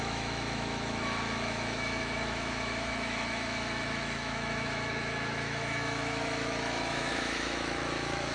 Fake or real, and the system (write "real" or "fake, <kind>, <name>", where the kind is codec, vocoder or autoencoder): fake, autoencoder, DAC-VAE